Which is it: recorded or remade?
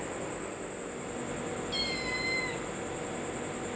recorded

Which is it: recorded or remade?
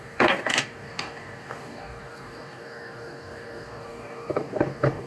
remade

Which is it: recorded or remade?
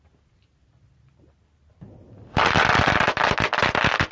recorded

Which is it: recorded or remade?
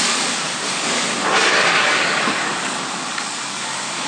remade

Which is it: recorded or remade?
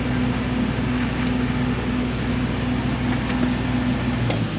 recorded